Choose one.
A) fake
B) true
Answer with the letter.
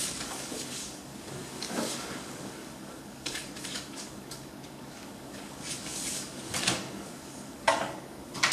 A